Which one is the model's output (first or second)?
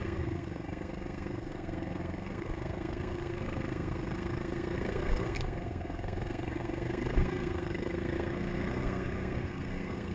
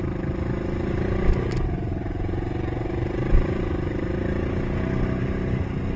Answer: first